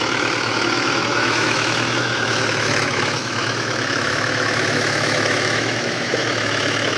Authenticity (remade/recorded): remade